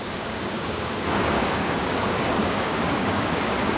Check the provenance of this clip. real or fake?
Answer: fake